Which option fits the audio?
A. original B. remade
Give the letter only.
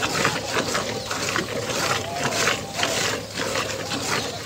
A